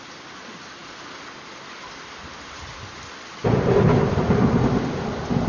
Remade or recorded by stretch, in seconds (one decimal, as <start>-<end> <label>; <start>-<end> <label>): 0.0-5.5 recorded